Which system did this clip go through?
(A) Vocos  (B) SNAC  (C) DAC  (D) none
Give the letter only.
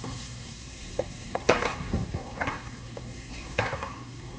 B